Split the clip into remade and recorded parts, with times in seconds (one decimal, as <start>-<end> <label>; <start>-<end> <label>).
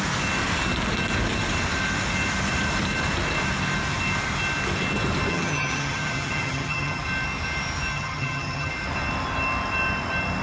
0.0-5.3 recorded; 5.3-7.0 remade; 7.0-7.9 recorded; 7.9-8.7 remade; 8.7-10.4 recorded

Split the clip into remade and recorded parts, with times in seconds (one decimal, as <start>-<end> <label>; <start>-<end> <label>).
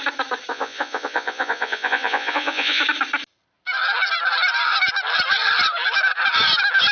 0.0-0.5 recorded; 0.5-2.8 remade; 2.8-6.9 recorded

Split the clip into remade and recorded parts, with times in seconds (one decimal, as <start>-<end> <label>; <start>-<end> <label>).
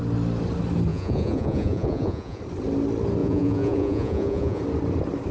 0.0-0.9 recorded; 0.9-2.4 remade; 2.4-3.2 recorded; 3.2-4.6 remade; 4.6-5.3 recorded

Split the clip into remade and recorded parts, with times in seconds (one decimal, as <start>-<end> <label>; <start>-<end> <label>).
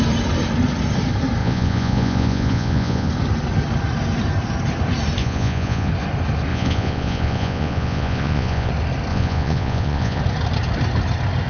0.0-1.4 recorded; 1.4-3.1 remade; 3.1-5.2 recorded; 5.2-5.9 remade; 5.9-6.5 recorded; 6.5-8.7 remade; 8.7-9.1 recorded; 9.1-10.2 remade; 10.2-11.5 recorded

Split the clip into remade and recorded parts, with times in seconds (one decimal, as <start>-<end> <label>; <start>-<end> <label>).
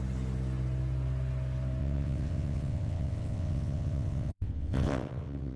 0.0-1.8 recorded; 1.8-5.6 remade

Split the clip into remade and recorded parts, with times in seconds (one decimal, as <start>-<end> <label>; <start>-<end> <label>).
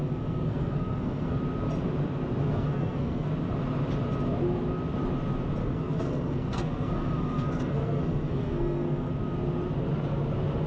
0.0-1.4 remade; 1.4-2.4 recorded; 2.4-3.3 remade; 3.3-5.6 recorded; 5.6-9.1 remade; 9.1-10.7 recorded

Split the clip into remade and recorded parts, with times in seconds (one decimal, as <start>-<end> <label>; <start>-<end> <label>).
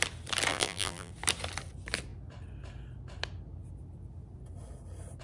0.0-0.5 recorded; 0.5-1.1 remade; 1.1-5.2 recorded